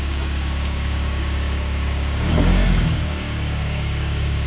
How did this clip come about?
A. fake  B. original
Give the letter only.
A